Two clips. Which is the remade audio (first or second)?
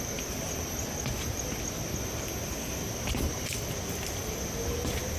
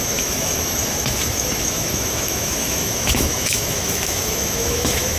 second